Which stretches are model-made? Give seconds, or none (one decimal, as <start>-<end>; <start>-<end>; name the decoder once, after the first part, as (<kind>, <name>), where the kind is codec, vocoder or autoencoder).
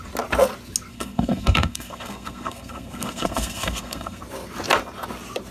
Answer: 0.9-4.2 (codec, SNAC)